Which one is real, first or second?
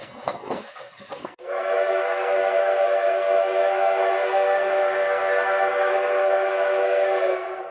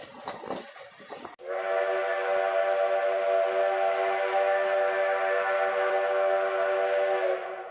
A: second